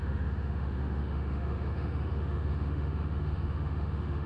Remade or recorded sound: remade